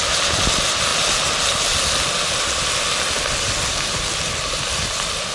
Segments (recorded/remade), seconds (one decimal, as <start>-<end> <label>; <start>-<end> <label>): 0.0-5.3 recorded